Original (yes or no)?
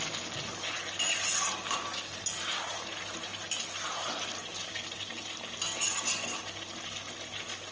yes